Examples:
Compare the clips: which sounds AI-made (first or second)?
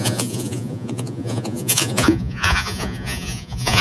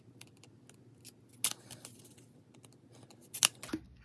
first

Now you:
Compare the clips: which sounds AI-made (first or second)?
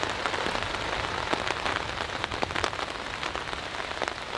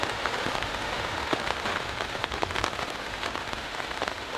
second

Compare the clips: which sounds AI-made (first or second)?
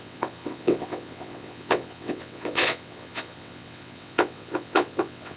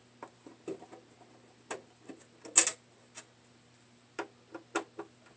first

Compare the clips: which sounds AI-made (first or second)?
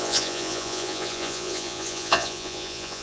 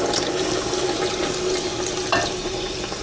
first